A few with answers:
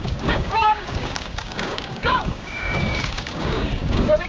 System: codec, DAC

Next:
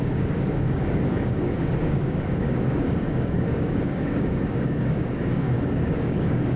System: codec, DAC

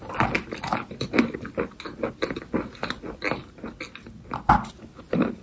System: none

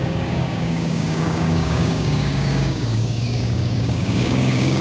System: codec, DAC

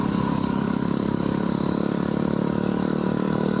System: codec, DAC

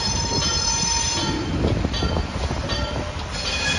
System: none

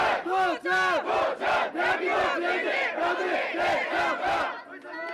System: none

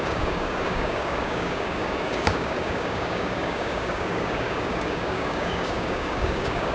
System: codec, DAC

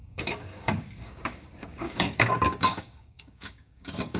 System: codec, DAC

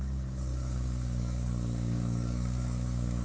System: codec, DAC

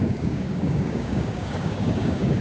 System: codec, DAC